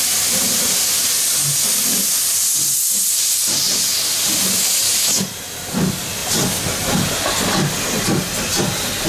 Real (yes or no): yes